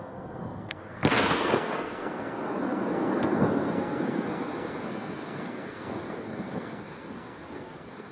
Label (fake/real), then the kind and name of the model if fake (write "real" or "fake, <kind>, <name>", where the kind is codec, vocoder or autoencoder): fake, codec, SNAC